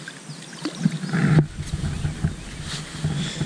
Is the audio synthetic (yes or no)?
no